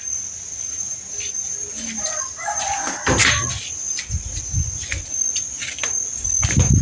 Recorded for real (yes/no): yes